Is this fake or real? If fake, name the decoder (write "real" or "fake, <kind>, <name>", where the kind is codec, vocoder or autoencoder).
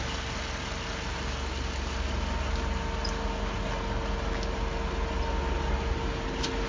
real